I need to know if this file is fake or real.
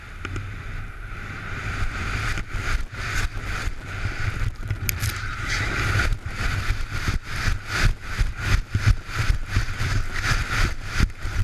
real